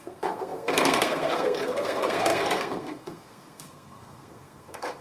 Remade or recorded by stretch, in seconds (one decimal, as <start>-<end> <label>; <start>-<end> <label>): 0.0-5.0 remade